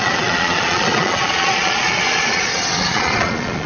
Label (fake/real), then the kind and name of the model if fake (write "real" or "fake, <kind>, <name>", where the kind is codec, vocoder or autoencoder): fake, vocoder, Vocos